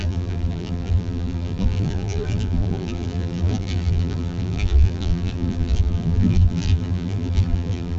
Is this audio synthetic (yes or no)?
yes